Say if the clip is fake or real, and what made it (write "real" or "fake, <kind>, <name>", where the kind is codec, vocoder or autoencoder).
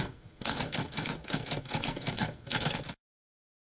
fake, codec, SNAC